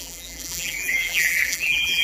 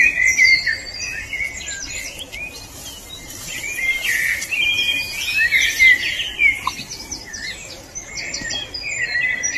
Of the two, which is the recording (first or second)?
second